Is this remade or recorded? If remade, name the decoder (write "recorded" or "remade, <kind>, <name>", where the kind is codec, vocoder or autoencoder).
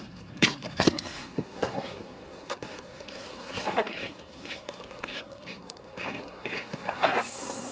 remade, codec, SNAC